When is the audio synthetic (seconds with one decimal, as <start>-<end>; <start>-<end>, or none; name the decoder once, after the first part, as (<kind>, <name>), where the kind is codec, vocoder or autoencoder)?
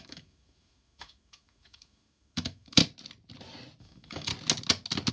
0.0-2.8 (autoencoder, DAC-VAE); 3.8-4.3